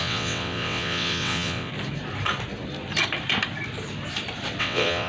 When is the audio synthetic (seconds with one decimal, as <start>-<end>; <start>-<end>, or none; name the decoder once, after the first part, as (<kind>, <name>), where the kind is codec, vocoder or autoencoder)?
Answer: 0.0-1.7 (vocoder, WaveNeXt); 4.6-5.1